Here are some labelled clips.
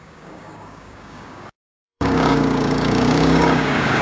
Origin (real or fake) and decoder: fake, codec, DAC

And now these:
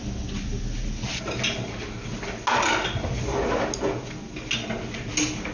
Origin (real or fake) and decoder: real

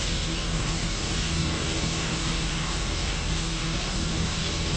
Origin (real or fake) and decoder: fake, codec, DAC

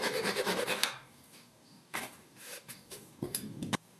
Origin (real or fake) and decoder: fake, codec, DAC